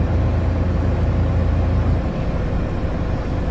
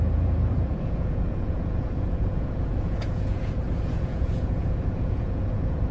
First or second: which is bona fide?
first